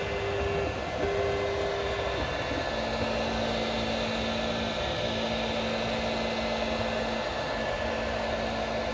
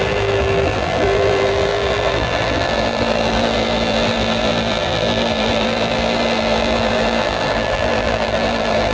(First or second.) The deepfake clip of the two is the second